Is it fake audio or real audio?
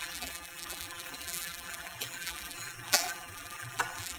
fake